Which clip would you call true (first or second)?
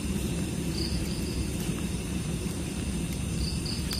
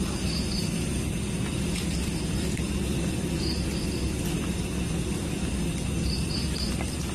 second